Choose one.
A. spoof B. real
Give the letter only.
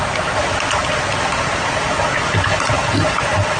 B